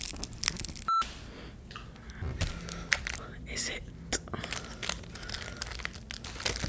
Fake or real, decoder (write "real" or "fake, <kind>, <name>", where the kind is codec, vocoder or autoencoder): real